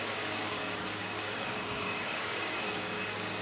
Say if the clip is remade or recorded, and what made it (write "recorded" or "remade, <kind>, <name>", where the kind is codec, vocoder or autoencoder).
remade, codec, DAC